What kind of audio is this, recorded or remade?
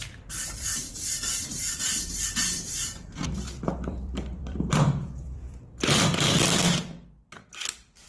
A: remade